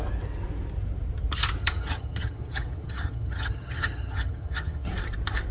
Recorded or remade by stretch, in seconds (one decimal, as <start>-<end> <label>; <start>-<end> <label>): 0.0-1.6 recorded; 1.6-4.9 remade; 4.9-5.5 recorded